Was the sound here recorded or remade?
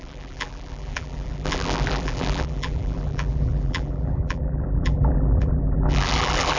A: remade